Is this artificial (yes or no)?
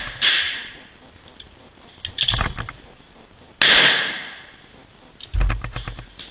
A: no